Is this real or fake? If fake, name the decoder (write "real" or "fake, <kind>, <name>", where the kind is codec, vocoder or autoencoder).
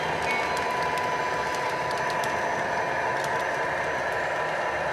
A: real